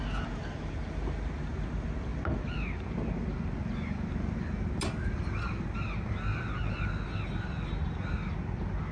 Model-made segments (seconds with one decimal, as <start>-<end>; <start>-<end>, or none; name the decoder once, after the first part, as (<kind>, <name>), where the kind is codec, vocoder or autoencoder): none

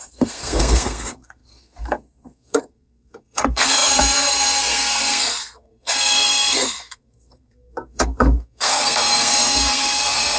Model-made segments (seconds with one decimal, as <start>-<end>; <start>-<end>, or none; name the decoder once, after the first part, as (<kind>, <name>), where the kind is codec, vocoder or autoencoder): 0.0-10.4 (codec, SNAC)

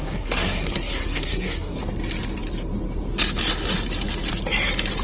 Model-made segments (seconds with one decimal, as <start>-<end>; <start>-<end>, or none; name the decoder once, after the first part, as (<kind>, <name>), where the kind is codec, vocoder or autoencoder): 0.0-1.8 (codec, SNAC)

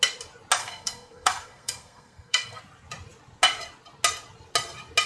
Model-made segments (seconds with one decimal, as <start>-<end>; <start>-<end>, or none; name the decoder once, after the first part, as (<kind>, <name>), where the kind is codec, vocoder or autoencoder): 0.6-2.6 (codec, SNAC)

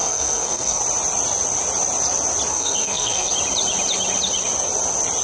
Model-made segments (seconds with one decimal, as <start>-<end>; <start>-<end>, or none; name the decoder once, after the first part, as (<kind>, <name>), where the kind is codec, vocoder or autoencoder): 0.0-0.8 (codec, SNAC); 2.5-3.3

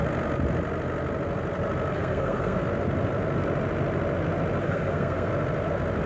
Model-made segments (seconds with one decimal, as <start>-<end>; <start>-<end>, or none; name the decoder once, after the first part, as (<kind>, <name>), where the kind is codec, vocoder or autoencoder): 1.9-2.6 (codec, SNAC); 4.6-5.3